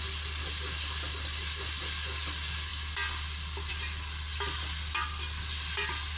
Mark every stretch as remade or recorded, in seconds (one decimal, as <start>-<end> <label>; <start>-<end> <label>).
0.0-6.2 recorded

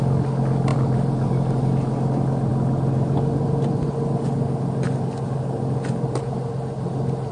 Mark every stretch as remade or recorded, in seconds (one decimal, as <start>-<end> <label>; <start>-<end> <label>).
0.0-0.7 recorded; 0.7-1.7 remade; 1.7-7.3 recorded

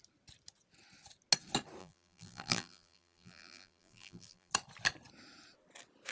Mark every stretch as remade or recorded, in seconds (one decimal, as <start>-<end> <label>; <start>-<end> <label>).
0.0-1.8 recorded; 1.8-4.5 remade; 4.5-6.1 recorded

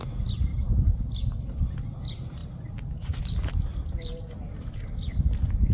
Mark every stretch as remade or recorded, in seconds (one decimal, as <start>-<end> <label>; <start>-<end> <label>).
0.0-0.5 recorded; 0.5-1.1 remade; 1.1-2.4 recorded; 2.4-3.3 remade; 3.3-3.7 recorded; 3.7-5.0 remade; 5.0-5.7 recorded